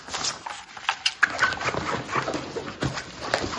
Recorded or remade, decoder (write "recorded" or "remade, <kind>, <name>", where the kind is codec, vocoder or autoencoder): recorded